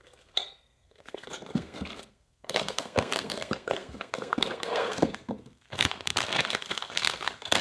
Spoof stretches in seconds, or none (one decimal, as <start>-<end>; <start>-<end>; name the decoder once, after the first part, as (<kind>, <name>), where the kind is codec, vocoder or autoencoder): 0.0-7.6 (codec, SNAC)

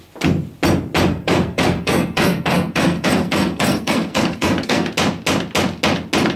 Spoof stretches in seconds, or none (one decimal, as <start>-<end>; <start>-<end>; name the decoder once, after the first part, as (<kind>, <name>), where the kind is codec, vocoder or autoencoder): 1.1-4.9 (codec, SNAC)

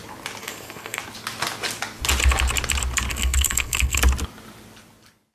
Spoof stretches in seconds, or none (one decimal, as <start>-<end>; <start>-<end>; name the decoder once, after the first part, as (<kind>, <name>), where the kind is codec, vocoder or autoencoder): 0.4-1.0 (codec, SNAC); 3.1-4.0

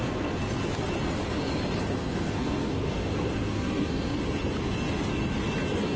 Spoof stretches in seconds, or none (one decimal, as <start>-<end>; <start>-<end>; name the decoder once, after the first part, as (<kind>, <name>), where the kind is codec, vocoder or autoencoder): 0.0-0.6 (codec, SNAC); 2.0-4.1

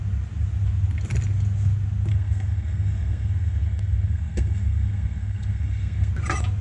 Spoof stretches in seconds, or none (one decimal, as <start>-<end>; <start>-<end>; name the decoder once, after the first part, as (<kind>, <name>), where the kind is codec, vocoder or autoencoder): 2.1-6.1 (codec, SNAC)

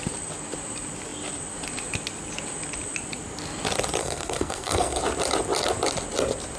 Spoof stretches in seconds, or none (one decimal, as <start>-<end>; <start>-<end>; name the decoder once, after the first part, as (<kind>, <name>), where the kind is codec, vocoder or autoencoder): 4.0-5.0 (codec, SNAC)

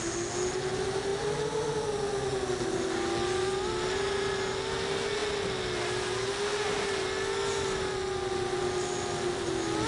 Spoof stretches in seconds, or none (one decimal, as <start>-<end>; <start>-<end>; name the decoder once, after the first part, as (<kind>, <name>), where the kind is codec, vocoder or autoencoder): none

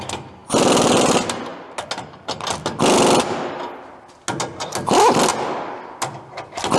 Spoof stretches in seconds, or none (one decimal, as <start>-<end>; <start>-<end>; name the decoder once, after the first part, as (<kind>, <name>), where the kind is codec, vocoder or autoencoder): none